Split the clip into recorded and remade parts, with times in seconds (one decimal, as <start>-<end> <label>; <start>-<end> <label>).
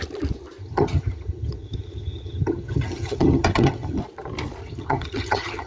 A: 0.0-0.6 recorded; 0.6-4.0 remade; 4.0-4.6 recorded; 4.6-5.7 remade